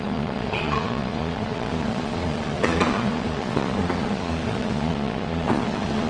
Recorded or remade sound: remade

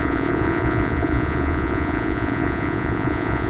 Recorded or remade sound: remade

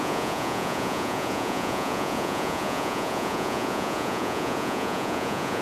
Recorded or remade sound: remade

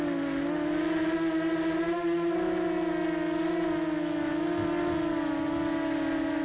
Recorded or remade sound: recorded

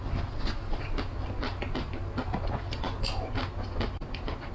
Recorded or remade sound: recorded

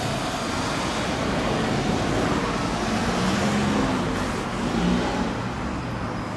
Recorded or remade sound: recorded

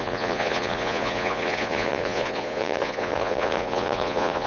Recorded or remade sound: remade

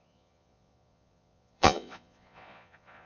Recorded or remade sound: remade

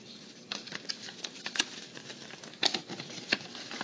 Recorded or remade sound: recorded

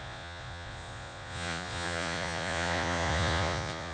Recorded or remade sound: remade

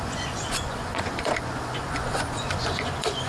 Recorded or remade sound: remade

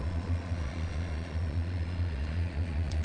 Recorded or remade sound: remade